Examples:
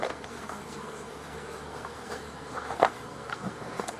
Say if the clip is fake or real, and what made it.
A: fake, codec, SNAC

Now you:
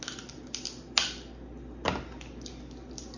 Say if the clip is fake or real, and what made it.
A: real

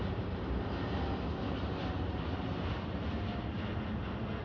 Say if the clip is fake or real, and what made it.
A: real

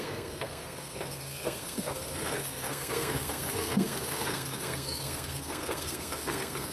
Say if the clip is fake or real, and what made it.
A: fake, codec, SNAC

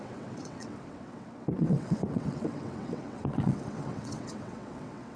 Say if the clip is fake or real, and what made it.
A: fake, vocoder, WaveNeXt